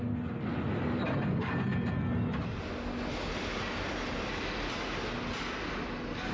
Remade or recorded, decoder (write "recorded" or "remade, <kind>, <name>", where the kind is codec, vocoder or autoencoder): recorded